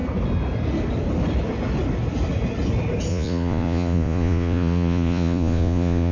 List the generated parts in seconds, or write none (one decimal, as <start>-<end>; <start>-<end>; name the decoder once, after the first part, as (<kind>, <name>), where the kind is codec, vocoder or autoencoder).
3.1-6.1 (vocoder, Vocos)